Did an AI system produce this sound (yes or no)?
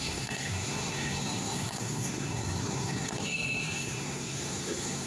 yes